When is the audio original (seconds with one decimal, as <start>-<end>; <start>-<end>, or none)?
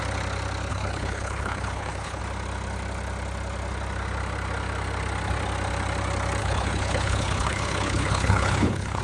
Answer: 0.0-0.7; 2.2-6.4